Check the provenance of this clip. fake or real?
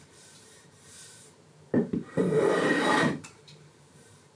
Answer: fake